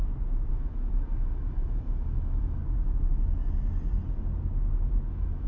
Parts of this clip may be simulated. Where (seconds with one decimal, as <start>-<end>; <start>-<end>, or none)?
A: 0.5-2.6; 5.1-5.5